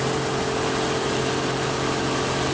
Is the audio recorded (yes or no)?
yes